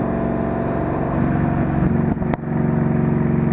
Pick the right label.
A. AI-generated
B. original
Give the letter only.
B